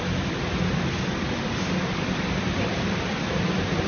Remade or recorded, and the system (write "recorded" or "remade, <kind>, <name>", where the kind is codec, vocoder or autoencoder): remade, vocoder, BigVGAN v2